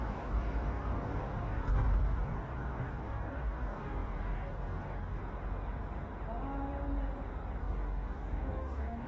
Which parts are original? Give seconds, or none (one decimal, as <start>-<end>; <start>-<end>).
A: 5.2-7.6